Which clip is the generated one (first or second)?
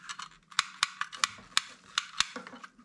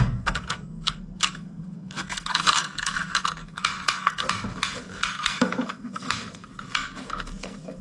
second